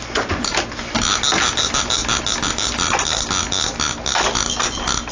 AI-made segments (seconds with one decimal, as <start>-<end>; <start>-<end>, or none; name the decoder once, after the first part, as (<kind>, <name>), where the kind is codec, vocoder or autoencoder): none